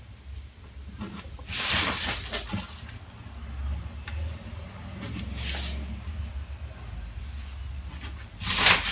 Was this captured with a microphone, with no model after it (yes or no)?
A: yes